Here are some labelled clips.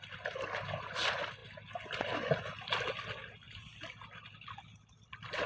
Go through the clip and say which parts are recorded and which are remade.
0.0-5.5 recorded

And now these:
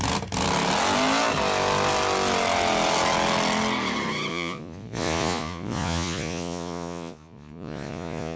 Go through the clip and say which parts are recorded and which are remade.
0.0-4.3 recorded; 4.3-8.4 remade

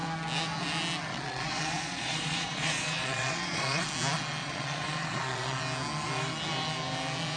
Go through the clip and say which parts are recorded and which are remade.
0.0-1.1 recorded; 1.1-3.8 remade; 3.8-4.4 recorded; 4.4-5.6 remade; 5.6-7.4 recorded

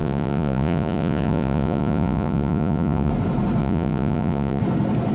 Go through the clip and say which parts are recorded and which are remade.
0.0-3.1 remade; 3.1-3.6 recorded; 3.6-4.6 remade; 4.6-5.1 recorded

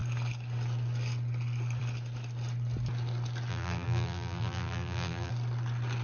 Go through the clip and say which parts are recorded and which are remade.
0.0-3.5 recorded; 3.5-5.3 remade; 5.3-6.0 recorded

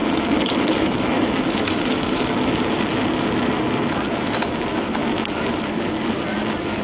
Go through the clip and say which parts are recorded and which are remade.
0.0-2.5 remade; 2.5-6.8 recorded

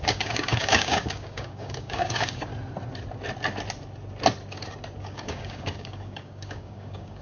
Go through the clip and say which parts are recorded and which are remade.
0.0-2.5 remade; 2.5-5.0 recorded; 5.0-7.2 remade

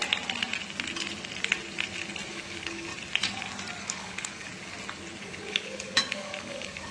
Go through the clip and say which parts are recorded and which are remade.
0.0-2.3 recorded; 2.3-2.9 remade; 2.9-3.8 recorded; 3.8-4.5 remade; 4.5-5.2 recorded; 5.2-6.9 remade